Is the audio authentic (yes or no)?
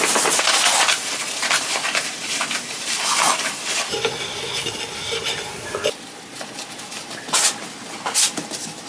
yes